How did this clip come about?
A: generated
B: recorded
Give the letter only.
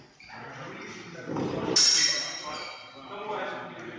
B